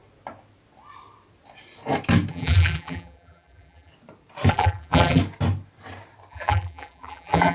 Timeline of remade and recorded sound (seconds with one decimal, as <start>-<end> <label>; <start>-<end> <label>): 0.0-2.3 recorded; 2.3-3.9 remade; 3.9-4.5 recorded; 4.5-5.2 remade; 5.2-6.3 recorded; 6.3-7.5 remade